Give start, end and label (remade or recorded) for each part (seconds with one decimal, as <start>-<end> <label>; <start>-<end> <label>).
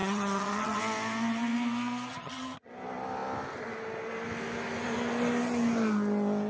0.0-0.8 remade; 0.8-2.1 recorded; 2.1-2.7 remade; 2.7-6.5 recorded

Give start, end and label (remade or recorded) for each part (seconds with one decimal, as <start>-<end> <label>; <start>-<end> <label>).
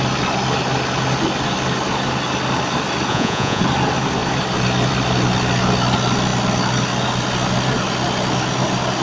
0.0-3.1 recorded; 3.1-3.6 remade; 3.6-9.0 recorded